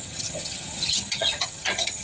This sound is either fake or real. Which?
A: fake